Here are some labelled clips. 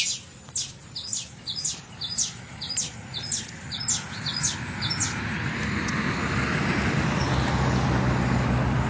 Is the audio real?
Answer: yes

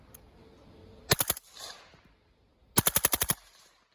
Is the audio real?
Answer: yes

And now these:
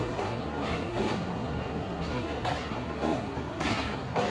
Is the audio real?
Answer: no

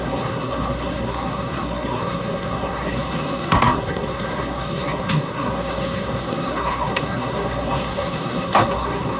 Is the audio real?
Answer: no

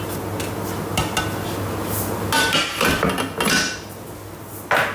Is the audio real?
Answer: yes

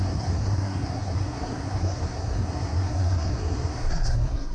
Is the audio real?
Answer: no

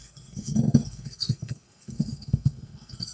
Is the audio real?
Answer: no